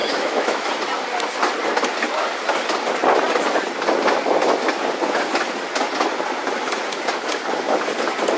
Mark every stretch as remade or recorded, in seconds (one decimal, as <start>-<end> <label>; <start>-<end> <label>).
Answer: 0.0-0.7 remade; 0.7-8.4 recorded